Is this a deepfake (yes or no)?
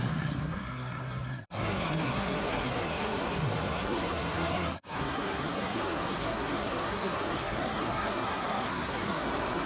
yes